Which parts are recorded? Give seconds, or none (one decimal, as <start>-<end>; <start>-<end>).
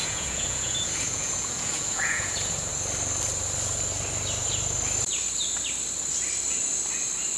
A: 2.7-7.4